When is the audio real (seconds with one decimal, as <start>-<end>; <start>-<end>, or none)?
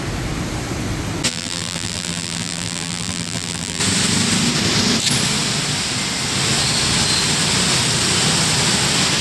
0.0-1.3; 3.8-9.2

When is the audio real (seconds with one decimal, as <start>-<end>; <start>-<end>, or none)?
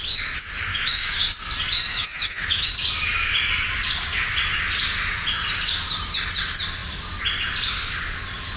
0.0-0.7; 1.2-1.9; 2.7-8.6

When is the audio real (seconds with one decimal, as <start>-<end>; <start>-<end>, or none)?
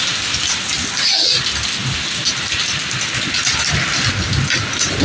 0.0-5.0